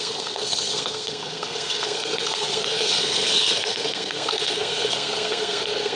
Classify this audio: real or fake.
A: fake